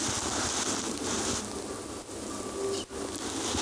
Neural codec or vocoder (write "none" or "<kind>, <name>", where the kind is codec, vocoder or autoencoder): none